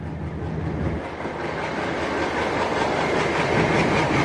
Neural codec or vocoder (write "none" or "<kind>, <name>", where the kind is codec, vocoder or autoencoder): none